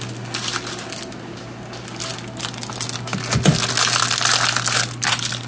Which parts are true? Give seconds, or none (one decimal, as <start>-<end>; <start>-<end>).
0.0-5.5